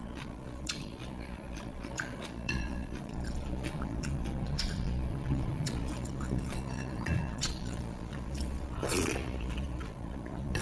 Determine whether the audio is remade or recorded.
remade